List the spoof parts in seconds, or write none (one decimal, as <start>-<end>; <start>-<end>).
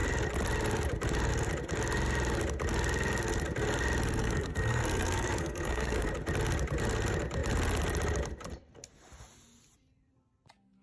4.2-6.1